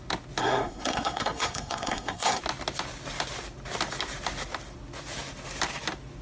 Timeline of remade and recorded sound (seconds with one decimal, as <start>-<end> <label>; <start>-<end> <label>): 0.0-0.4 recorded; 0.4-2.4 remade; 2.4-6.2 recorded